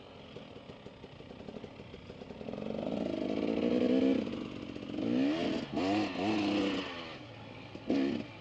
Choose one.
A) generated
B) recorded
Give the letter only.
B